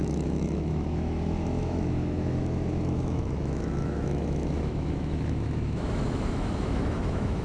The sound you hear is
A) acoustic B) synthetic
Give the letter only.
B